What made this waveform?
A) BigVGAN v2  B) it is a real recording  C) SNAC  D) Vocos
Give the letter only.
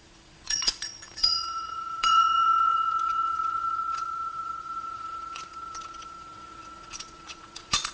D